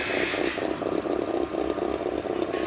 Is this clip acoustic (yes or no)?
yes